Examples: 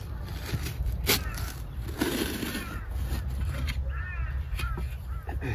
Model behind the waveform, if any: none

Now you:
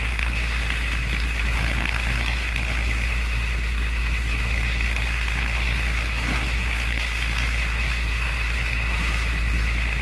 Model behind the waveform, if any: codec, SNAC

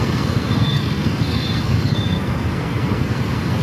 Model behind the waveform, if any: codec, SNAC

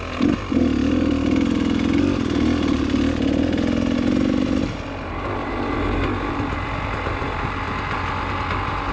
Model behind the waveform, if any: none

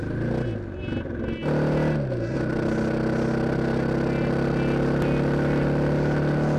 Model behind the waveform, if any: none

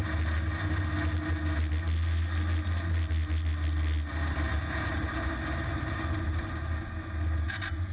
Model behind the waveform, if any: none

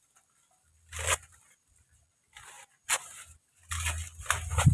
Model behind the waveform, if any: none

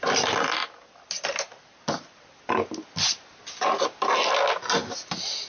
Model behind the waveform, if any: none